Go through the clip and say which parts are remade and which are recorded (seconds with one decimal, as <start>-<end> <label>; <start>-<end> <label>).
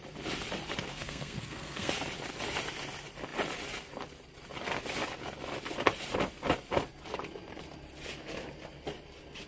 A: 0.0-0.9 recorded; 0.9-1.9 remade; 1.9-9.5 recorded